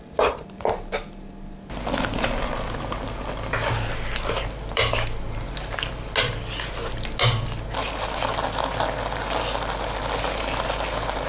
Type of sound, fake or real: real